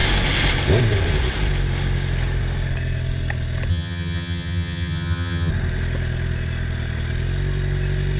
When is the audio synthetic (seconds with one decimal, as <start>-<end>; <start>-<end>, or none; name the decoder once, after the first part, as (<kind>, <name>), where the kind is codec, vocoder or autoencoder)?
3.7-5.5 (vocoder, HiFi-GAN)